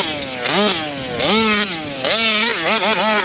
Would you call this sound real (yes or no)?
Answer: yes